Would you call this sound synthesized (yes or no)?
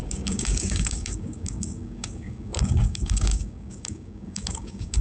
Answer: yes